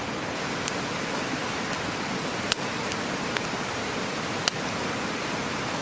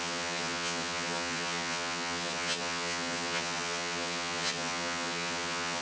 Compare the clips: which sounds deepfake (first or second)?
second